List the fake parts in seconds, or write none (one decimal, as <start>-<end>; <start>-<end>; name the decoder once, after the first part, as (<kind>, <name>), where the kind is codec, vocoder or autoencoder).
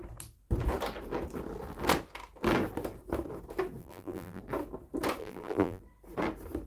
3.8-4.4 (vocoder, BigVGAN v2); 5.2-5.8